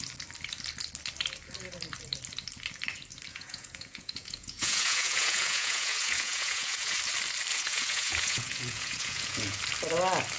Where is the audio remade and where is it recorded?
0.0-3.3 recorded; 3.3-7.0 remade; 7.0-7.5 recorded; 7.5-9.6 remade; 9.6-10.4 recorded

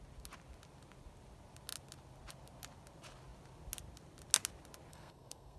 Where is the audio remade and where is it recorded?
0.0-4.9 recorded; 4.9-5.6 remade